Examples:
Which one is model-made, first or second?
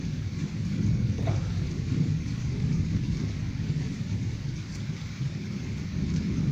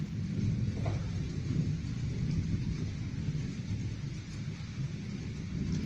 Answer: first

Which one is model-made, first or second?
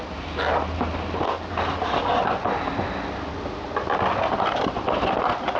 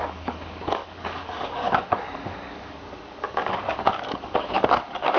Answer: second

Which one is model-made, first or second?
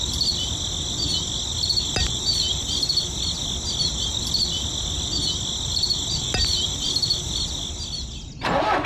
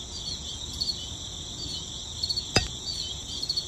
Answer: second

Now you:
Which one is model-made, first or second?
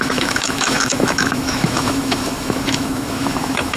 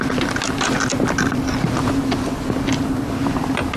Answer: first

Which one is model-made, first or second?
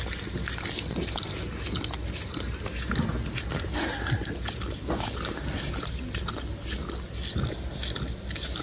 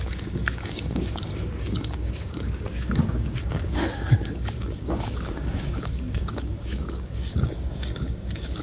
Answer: second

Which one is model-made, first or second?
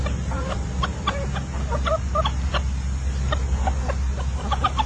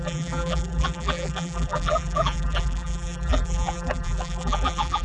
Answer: second